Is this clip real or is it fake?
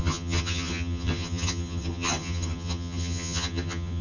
fake